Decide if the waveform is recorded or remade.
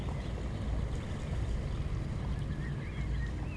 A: recorded